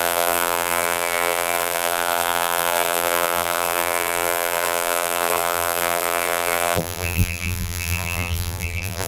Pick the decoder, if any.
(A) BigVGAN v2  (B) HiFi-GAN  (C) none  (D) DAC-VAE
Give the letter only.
A